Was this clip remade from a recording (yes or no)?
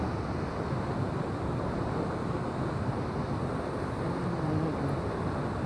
no